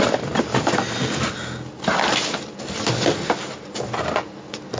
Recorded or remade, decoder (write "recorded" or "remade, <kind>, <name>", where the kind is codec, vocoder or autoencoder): recorded